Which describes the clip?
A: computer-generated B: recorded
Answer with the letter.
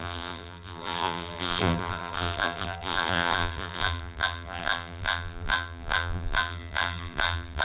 A